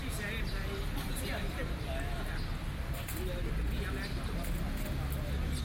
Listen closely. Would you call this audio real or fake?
real